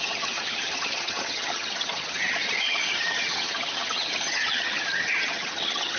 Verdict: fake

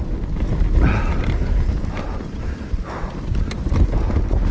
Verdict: real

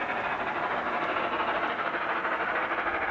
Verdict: real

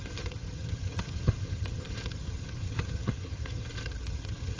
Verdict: fake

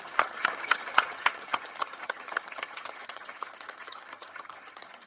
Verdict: fake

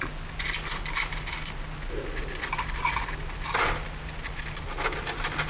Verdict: real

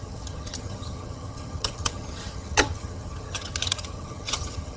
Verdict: fake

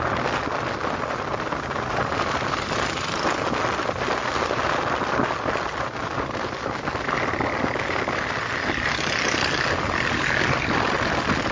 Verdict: real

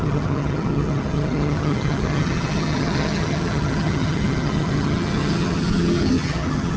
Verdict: fake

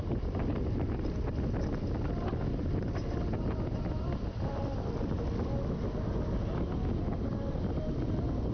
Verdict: real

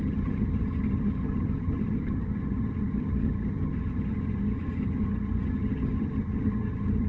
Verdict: fake